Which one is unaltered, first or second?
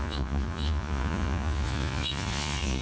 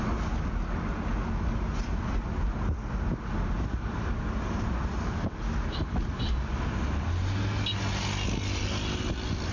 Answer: second